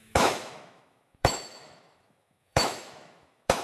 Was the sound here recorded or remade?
remade